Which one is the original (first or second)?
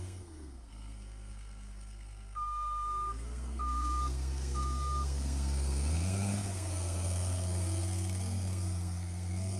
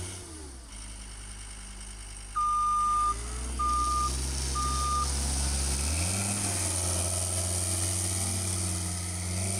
second